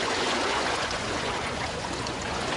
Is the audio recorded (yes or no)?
no